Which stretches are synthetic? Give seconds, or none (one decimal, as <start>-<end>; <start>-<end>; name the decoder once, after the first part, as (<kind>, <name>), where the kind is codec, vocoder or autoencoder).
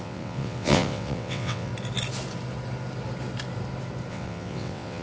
0.0-1.7 (vocoder, WaveNeXt); 4.1-5.0